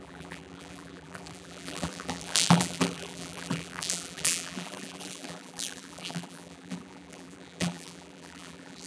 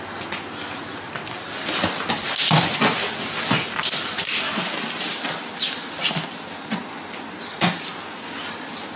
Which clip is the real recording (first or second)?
second